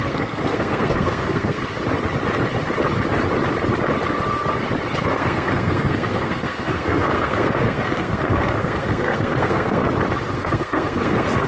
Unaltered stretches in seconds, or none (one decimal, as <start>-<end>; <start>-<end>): 1.6-5.0; 9.8-10.3